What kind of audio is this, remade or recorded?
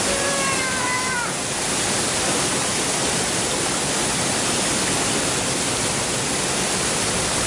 recorded